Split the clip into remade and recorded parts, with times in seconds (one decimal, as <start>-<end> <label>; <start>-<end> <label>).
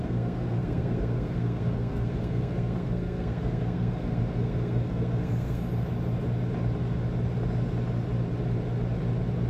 0.0-5.6 remade; 5.6-9.5 recorded